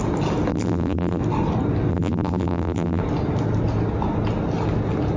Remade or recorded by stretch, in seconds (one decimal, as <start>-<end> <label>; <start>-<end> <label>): 0.0-0.5 recorded; 0.5-1.2 remade; 1.2-1.9 recorded; 1.9-3.0 remade; 3.0-5.2 recorded